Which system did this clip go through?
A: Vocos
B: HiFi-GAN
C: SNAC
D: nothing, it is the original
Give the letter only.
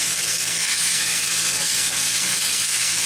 C